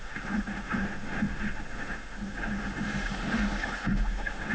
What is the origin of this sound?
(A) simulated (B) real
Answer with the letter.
A